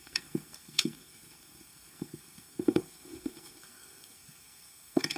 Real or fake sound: fake